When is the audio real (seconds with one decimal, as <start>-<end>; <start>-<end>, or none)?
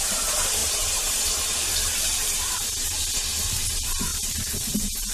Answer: none